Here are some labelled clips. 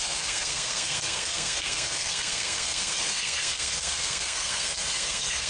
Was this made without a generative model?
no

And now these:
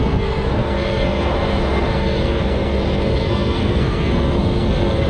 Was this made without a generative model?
no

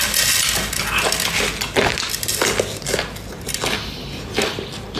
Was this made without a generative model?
yes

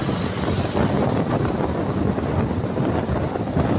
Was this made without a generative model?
yes